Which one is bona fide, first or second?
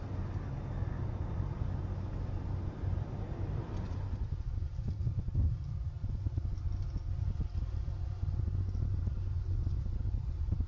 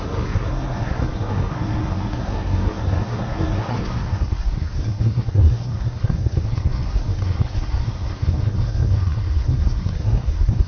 first